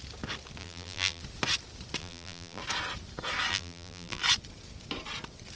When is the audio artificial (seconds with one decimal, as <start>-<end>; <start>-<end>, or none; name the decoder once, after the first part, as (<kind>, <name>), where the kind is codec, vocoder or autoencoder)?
0.6-1.2 (vocoder, BigVGAN v2); 2.0-2.6; 3.5-4.2